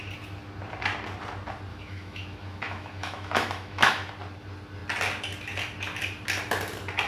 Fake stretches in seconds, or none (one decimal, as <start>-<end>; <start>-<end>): 1.7-4.1